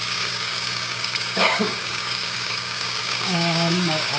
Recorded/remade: remade